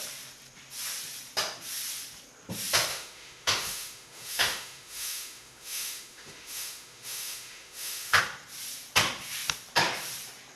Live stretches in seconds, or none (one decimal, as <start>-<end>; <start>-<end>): 0.0-2.9; 8.2-10.6